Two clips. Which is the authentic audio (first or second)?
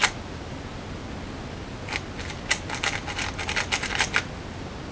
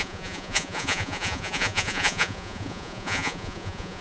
first